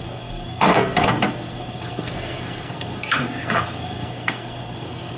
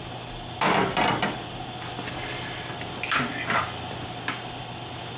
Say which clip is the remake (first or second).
first